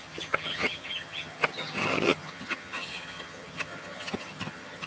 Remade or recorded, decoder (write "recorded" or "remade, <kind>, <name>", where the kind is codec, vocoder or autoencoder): remade, vocoder, HiFi-GAN